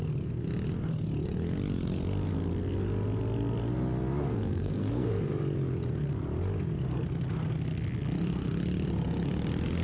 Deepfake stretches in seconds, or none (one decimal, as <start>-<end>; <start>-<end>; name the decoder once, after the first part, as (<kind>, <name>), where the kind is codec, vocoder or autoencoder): 4.3-5.1 (codec, SNAC)